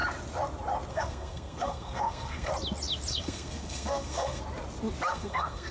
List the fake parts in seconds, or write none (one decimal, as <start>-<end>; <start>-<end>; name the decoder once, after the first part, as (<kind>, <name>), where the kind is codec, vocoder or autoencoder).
0.9-2.5 (codec, SNAC); 3.1-4.4; 5.1-5.7

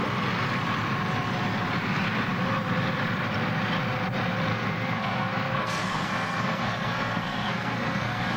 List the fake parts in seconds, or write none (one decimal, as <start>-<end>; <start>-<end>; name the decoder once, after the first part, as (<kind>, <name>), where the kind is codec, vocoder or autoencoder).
4.5-8.4 (codec, SNAC)

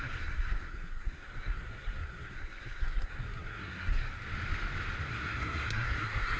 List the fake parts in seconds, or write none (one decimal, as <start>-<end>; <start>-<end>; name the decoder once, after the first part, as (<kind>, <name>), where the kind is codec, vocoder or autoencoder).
0.0-4.1 (codec, SNAC); 5.1-6.4

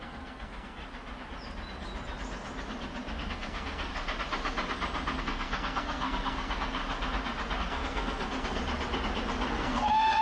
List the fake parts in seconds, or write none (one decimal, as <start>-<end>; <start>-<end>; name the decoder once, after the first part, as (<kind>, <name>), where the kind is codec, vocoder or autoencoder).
0.0-0.8 (codec, SNAC); 3.3-3.9; 5.2-6.8; 7.6-8.6; 9.5-10.2

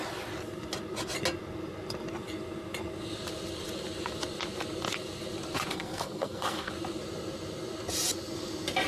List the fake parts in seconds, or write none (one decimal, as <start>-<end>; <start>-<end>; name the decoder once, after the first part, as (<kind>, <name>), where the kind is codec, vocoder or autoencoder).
5.7-6.7 (codec, SNAC)

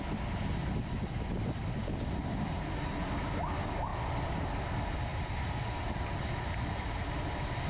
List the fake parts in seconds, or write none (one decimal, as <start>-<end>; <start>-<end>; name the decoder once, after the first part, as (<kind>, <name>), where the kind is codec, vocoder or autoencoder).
none

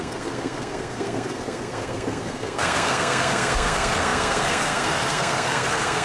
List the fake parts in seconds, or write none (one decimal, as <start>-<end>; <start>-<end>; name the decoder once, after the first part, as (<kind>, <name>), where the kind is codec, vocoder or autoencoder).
0.0-6.0 (codec, SNAC)